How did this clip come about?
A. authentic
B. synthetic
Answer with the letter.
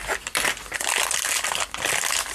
B